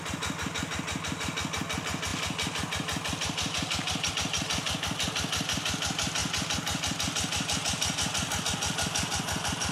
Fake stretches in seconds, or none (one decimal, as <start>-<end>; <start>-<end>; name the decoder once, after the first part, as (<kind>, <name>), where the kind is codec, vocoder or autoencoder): none